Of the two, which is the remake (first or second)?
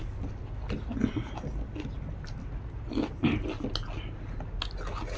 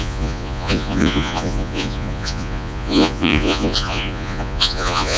second